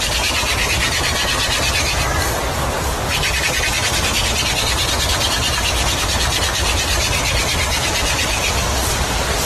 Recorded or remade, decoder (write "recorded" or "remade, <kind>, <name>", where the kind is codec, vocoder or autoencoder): recorded